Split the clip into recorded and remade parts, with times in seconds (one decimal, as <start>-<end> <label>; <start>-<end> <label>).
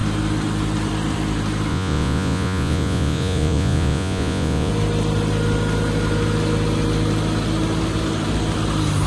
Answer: 0.0-1.7 recorded; 1.7-4.7 remade; 4.7-9.1 recorded